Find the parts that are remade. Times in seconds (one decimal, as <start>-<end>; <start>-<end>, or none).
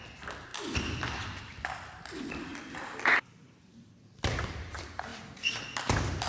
2.5-4.5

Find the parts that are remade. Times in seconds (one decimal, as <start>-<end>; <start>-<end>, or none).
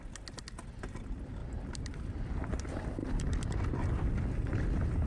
none